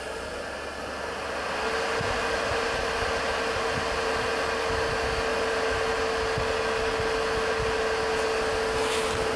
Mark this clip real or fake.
real